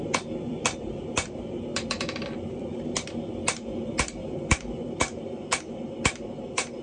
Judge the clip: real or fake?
fake